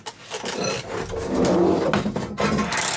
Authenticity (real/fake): real